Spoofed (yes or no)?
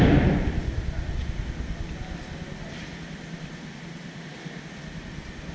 no